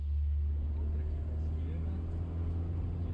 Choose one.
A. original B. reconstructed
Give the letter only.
A